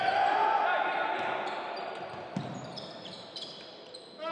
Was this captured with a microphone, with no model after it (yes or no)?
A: yes